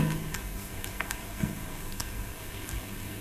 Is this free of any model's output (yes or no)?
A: no